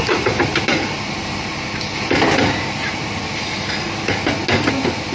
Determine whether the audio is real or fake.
real